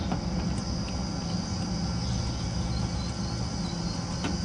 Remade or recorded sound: recorded